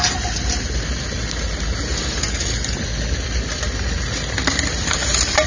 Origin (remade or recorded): recorded